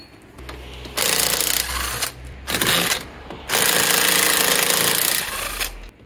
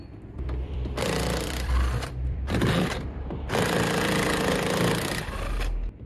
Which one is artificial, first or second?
second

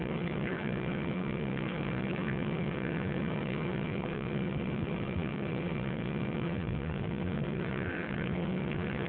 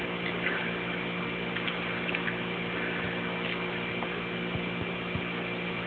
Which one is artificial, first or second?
first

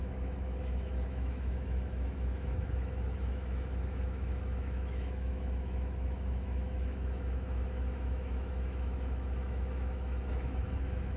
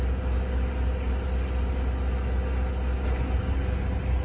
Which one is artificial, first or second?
first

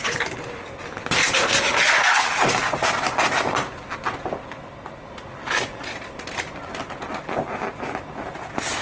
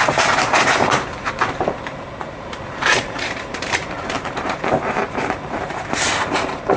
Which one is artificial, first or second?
second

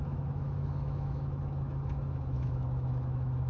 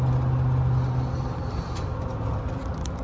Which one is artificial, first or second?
first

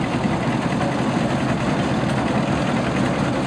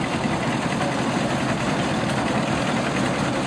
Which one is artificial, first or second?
second